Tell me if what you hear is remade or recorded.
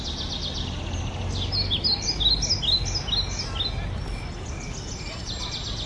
recorded